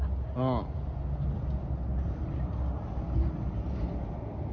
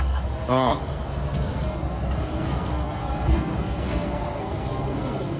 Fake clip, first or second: second